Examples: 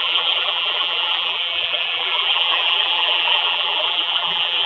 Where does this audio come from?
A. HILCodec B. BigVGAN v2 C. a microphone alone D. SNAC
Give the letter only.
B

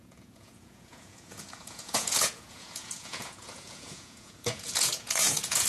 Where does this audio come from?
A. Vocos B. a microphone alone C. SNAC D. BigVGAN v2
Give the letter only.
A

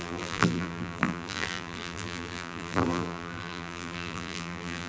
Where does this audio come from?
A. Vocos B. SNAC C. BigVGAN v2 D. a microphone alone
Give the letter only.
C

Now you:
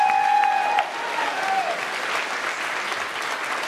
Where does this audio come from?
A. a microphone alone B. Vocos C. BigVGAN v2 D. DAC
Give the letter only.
A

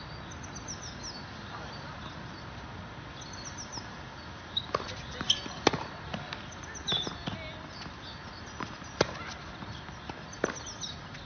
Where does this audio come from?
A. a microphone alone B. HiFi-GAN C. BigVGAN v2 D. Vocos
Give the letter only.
A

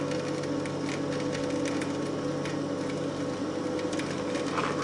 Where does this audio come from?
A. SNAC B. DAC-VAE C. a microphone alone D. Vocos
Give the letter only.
C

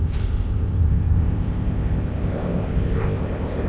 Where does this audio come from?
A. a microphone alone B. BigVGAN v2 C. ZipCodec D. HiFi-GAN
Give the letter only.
C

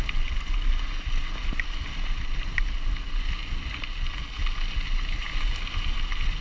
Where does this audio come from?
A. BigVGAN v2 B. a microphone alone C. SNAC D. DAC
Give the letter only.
B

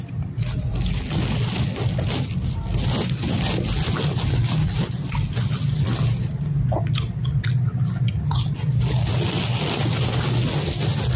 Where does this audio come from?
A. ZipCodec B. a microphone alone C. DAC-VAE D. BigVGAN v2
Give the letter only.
B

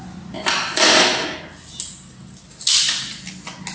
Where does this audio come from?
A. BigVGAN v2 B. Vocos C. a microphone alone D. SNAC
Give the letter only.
C